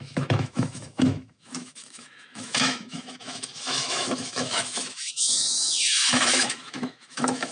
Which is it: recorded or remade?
remade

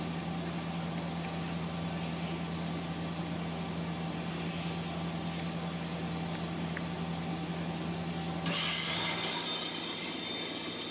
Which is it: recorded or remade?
recorded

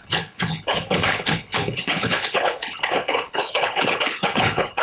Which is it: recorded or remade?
remade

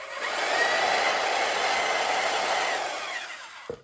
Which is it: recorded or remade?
recorded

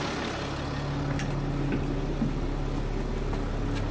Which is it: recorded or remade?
recorded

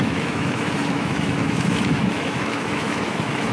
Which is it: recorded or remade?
remade